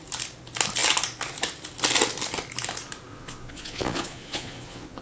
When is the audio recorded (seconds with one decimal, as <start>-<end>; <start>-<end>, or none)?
0.0-3.1